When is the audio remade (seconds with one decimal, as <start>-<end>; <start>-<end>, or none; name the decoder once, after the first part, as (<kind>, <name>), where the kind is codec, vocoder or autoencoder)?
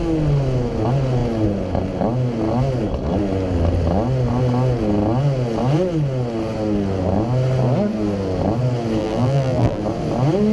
9.0-9.8 (vocoder, BigVGAN v2)